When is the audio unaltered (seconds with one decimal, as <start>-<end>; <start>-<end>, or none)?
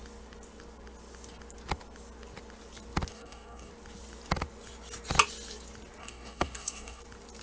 0.0-3.1; 3.7-6.0; 7.0-7.4